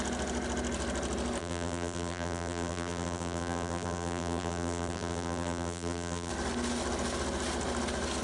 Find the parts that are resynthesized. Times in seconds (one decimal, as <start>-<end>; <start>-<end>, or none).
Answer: 1.4-6.3